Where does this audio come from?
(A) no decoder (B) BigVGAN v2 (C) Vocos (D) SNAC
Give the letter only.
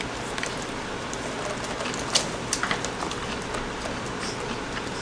A